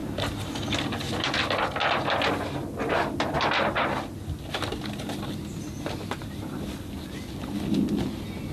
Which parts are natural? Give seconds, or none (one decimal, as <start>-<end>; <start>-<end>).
0.0-8.5